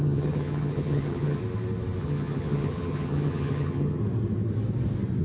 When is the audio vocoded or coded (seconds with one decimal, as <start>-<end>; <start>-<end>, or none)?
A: 0.0-1.4; 2.0-4.0